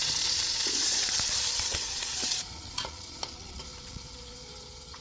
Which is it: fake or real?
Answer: fake